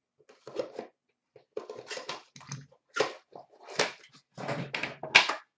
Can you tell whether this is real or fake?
real